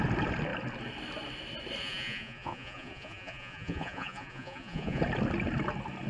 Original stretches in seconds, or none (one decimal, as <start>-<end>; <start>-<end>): 0.0-1.8; 5.0-6.1